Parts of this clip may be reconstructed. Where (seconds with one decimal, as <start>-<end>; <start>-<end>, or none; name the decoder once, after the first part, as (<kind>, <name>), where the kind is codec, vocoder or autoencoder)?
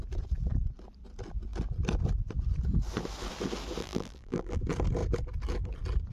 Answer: 3.8-4.6 (vocoder, BigVGAN v2)